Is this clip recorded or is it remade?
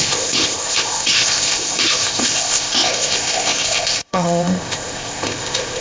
remade